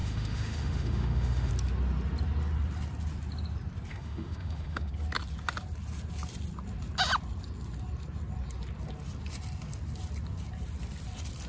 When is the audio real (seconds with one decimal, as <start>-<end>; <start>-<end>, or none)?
1.5-3.9; 4.9-11.5